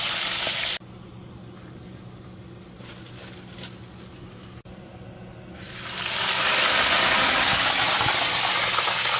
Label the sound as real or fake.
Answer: real